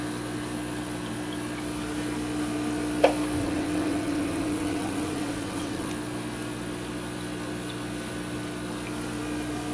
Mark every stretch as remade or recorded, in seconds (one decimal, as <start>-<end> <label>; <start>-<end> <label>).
0.0-3.4 recorded; 3.4-5.9 remade; 5.9-9.7 recorded